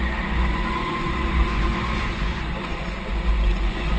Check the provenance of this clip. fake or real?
fake